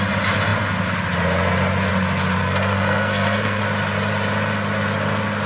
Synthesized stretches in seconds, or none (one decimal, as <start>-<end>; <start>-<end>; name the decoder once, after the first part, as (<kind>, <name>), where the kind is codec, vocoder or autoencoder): 2.4-3.6 (codec, SNAC)